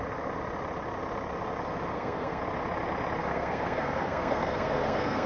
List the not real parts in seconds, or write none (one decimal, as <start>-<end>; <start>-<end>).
1.9-2.4; 3.2-5.3